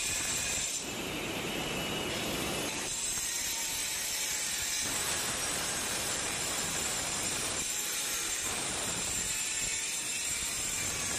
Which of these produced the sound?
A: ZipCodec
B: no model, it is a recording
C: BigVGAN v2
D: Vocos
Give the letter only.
C